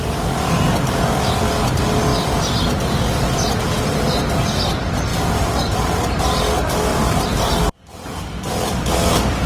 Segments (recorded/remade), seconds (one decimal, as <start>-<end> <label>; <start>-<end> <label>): 0.0-5.1 recorded; 5.1-6.2 remade; 6.2-6.9 recorded; 6.9-7.5 remade; 7.5-9.5 recorded